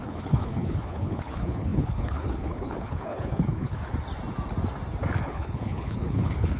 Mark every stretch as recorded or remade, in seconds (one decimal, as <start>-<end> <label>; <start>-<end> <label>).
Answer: 0.0-3.8 remade; 3.8-5.2 recorded; 5.2-6.6 remade

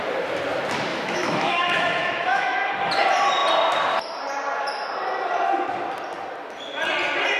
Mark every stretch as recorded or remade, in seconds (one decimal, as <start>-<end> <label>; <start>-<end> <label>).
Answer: 0.0-0.9 recorded; 0.9-2.7 remade; 2.7-7.4 recorded

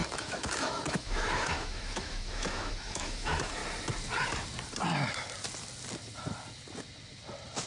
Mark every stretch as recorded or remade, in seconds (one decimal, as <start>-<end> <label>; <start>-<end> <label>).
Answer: 0.0-3.6 remade; 3.6-7.7 recorded

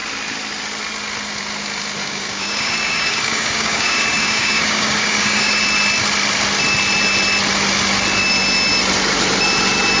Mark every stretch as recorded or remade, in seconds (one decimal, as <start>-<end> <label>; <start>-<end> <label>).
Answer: 0.0-2.0 recorded; 2.0-5.6 remade; 5.6-10.0 recorded

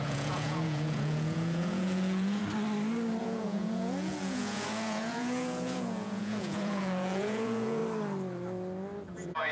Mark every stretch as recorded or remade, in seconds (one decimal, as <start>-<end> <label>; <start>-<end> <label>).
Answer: 0.0-2.4 remade; 2.4-3.2 recorded; 3.2-7.8 remade; 7.8-9.1 recorded; 9.1-9.5 remade

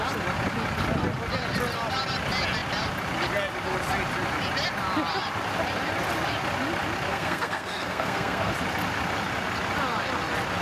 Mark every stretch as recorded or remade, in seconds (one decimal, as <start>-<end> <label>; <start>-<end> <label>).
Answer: 0.0-7.1 recorded; 7.1-8.5 remade; 8.5-10.6 recorded